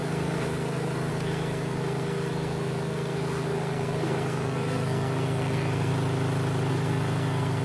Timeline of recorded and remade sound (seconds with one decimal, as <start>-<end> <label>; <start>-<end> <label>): 0.0-5.9 remade; 5.9-6.7 recorded; 6.7-7.6 remade